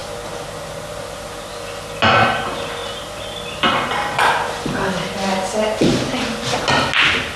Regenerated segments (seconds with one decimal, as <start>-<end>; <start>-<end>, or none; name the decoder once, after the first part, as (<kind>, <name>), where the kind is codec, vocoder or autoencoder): none